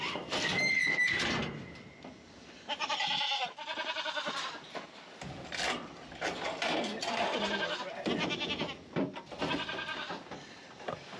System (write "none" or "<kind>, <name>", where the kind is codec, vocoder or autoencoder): vocoder, BigVGAN v2